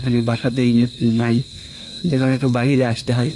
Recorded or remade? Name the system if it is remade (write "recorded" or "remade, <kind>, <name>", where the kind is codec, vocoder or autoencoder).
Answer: remade, codec, SNAC